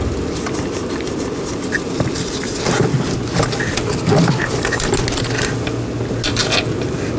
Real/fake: real